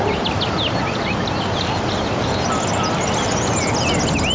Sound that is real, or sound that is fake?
real